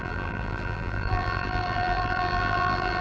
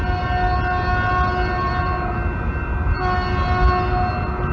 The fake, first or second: first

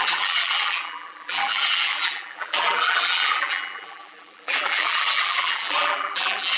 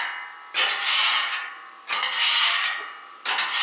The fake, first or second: first